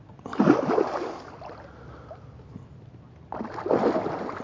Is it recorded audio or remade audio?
recorded